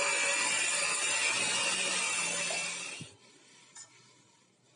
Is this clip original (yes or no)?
yes